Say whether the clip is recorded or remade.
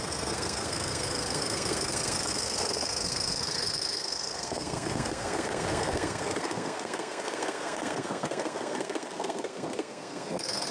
remade